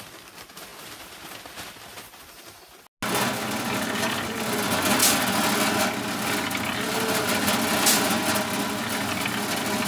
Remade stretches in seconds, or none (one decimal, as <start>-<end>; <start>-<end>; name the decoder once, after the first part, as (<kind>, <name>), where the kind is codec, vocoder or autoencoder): none